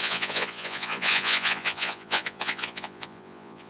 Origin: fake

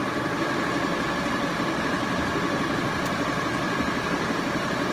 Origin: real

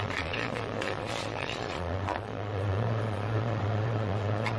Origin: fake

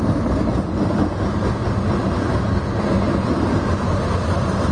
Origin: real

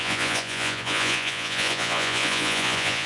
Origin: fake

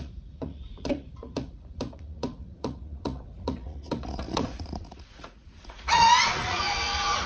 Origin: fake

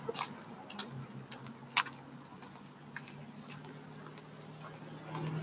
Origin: real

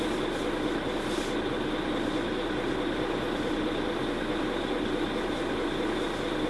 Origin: real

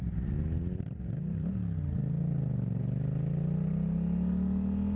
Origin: real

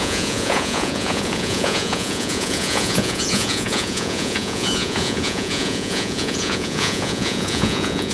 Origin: fake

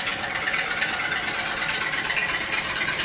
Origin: real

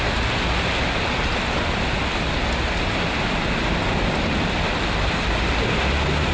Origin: real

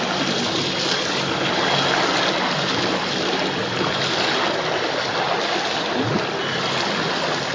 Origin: real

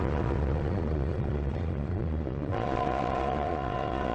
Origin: fake